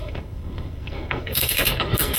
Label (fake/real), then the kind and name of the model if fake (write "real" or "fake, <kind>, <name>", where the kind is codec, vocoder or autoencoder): fake, codec, SNAC